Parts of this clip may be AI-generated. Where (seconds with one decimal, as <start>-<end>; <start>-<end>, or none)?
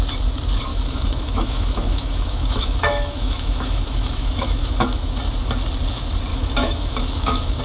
0.7-5.2; 6.3-7.6